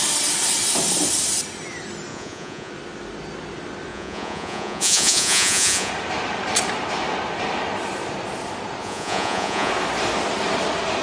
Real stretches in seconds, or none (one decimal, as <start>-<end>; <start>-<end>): 0.0-2.1; 2.7-3.9; 5.9-8.8; 9.7-11.0

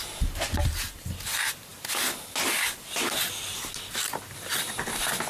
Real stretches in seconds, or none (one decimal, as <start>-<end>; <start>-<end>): 0.0-5.3

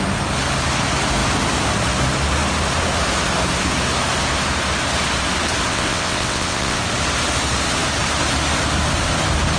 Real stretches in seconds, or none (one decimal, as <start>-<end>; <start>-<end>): 0.0-5.7; 6.8-9.6

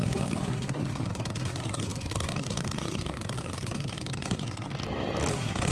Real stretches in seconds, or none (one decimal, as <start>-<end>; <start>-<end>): 4.7-5.3

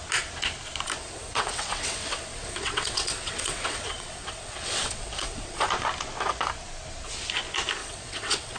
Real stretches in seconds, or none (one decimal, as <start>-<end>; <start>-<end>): 0.0-1.0; 5.7-7.8